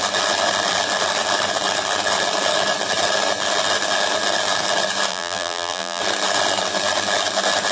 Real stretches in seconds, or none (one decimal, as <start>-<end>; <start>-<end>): 0.0-5.1; 6.0-7.7